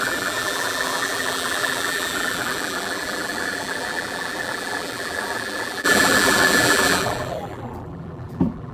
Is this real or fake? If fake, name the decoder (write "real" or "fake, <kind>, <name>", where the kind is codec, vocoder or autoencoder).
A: fake, vocoder, BigVGAN v2